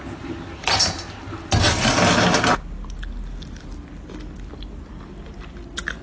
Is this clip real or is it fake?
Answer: real